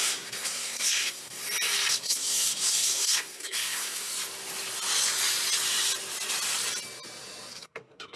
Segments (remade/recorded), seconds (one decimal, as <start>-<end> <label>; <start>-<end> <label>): 0.0-1.4 remade; 1.4-1.9 recorded; 1.9-4.1 remade; 4.1-7.5 recorded; 7.5-8.2 remade